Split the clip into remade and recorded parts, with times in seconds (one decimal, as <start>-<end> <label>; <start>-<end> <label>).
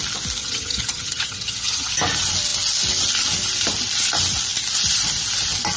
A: 0.0-0.4 recorded; 0.4-1.9 remade; 1.9-5.8 recorded